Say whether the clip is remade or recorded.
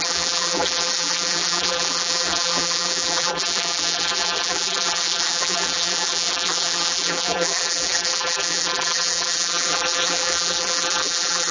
remade